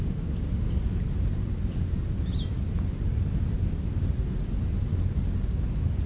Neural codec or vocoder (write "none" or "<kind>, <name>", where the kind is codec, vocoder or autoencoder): none